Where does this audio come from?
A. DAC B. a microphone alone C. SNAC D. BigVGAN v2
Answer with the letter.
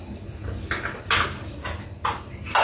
B